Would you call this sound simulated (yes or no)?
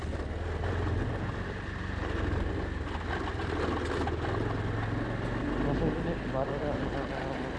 no